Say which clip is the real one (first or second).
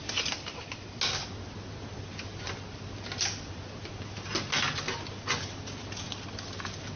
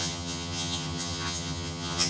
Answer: first